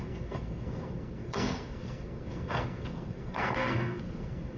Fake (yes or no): yes